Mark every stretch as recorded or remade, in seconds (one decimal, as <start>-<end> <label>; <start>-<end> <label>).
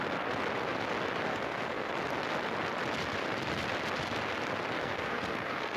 0.0-1.3 recorded; 1.3-1.9 remade; 1.9-4.8 recorded; 4.8-5.8 remade